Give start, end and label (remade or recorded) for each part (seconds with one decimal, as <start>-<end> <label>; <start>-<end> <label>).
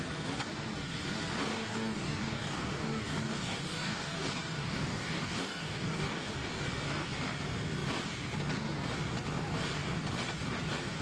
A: 0.0-1.5 recorded; 1.5-6.7 remade; 6.7-11.0 recorded